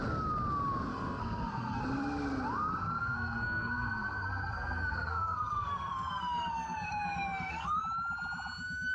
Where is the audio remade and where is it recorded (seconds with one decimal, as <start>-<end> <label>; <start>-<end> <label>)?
0.0-0.9 recorded; 0.9-1.8 remade; 1.8-3.0 recorded; 3.0-7.8 remade; 7.8-8.9 recorded